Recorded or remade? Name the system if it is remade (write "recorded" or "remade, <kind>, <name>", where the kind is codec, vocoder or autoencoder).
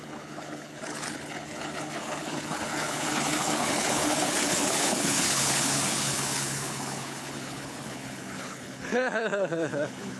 remade, codec, HILCodec